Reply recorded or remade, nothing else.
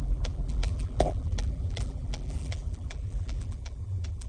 remade